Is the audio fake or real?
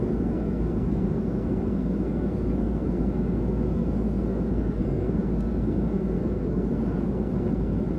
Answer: fake